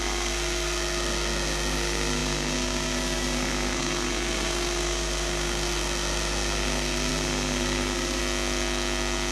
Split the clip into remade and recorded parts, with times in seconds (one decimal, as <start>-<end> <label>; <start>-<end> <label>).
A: 0.0-8.2 remade; 8.2-9.3 recorded